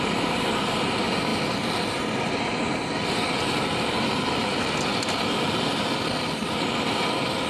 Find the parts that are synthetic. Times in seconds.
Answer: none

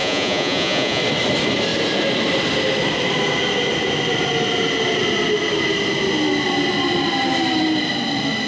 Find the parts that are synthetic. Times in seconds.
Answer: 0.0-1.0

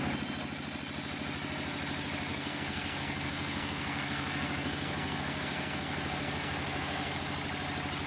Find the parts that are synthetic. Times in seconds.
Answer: 2.3-7.2